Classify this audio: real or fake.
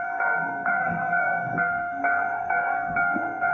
fake